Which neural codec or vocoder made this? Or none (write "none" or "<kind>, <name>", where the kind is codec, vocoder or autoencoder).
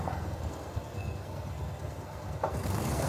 codec, SNAC